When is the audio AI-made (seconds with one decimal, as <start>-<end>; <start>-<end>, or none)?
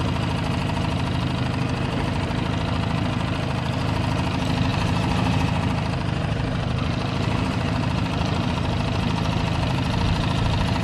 4.7-8.5